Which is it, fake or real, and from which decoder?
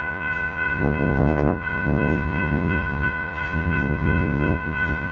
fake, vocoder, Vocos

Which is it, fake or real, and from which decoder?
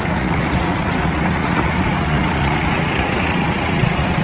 fake, vocoder, Vocos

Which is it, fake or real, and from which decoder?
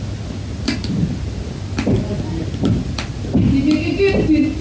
real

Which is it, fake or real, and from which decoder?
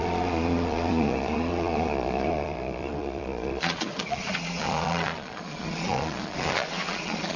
fake, vocoder, Vocos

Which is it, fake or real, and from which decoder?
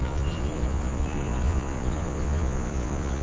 fake, vocoder, Vocos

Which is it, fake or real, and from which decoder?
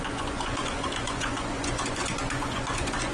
fake, vocoder, Vocos